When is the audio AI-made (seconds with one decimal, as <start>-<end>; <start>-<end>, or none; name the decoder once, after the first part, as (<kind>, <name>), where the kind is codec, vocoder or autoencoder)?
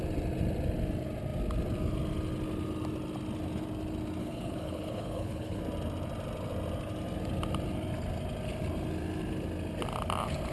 4.2-5.6 (codec, HILCodec)